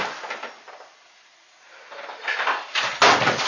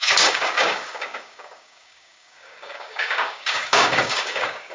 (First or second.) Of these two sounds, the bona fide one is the first